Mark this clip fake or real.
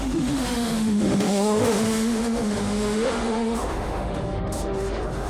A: fake